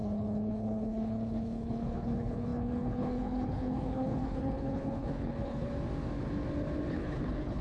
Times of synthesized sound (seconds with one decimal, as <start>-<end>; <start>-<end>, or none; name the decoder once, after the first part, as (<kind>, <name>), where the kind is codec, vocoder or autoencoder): 0.0-5.7 (codec, HILCodec); 6.9-7.6